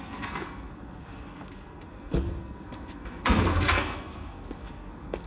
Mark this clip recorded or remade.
remade